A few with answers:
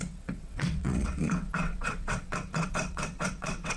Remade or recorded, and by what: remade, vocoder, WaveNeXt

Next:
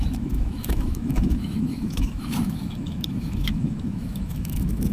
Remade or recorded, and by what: remade, autoencoder, DAC-VAE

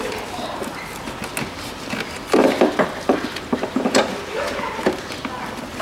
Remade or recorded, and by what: recorded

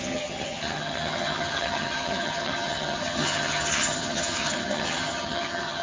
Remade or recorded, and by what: remade, vocoder, HiFi-GAN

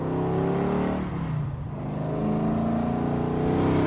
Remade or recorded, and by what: recorded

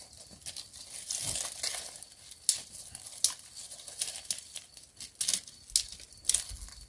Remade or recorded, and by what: recorded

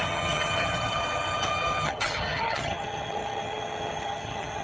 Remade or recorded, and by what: remade, vocoder, HiFi-GAN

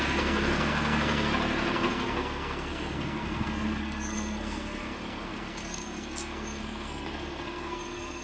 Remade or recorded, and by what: remade, codec, SNAC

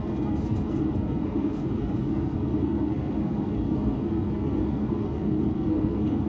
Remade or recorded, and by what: remade, codec, SNAC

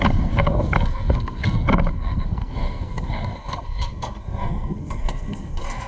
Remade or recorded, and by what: remade, codec, SNAC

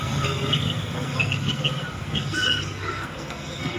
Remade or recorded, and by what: remade, codec, SNAC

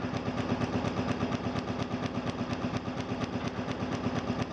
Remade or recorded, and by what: recorded